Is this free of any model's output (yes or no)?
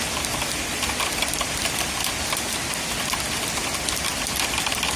yes